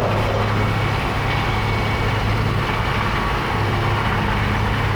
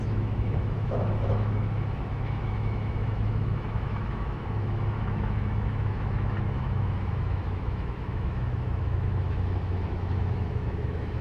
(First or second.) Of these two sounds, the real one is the first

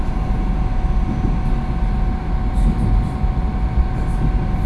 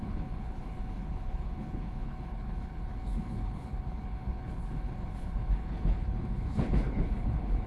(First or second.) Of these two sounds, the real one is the first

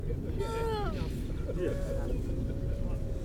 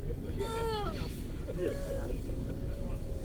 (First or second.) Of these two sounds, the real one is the first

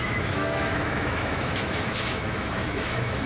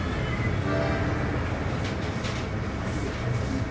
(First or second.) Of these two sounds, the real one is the second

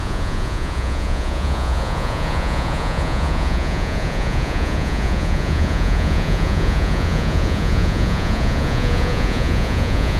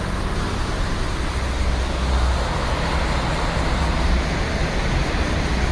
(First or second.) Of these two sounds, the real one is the second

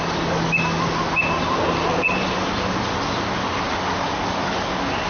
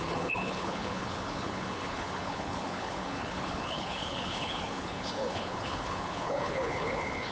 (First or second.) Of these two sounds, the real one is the first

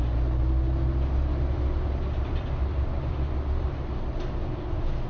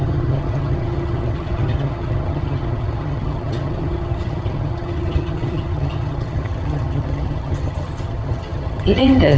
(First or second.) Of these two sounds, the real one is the first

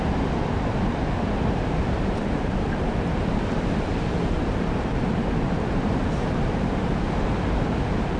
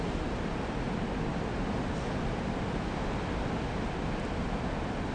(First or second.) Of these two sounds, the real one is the second